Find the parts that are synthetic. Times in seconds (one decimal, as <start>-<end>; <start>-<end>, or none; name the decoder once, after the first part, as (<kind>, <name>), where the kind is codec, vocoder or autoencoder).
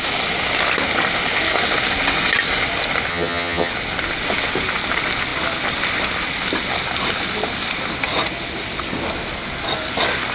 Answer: 3.1-3.7 (vocoder, HiFi-GAN)